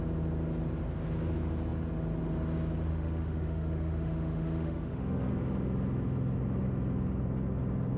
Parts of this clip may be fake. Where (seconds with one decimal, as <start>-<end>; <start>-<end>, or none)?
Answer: 2.9-5.3